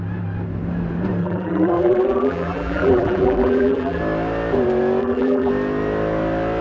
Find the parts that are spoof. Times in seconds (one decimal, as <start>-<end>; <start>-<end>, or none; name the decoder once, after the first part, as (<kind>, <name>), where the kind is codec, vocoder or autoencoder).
1.2-4.0 (vocoder, BigVGAN v2); 5.0-5.5